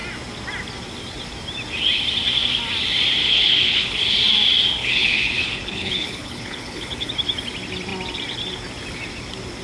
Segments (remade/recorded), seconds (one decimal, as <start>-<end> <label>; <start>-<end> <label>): 0.0-3.2 recorded; 3.2-4.2 remade; 4.2-4.8 recorded; 4.8-7.1 remade; 7.1-9.6 recorded